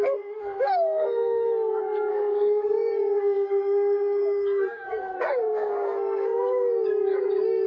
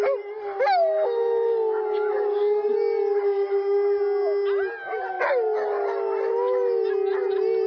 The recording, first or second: second